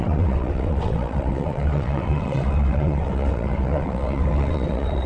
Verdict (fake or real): fake